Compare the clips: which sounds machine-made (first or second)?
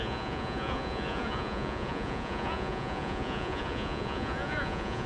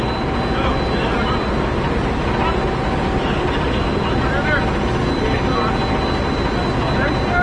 first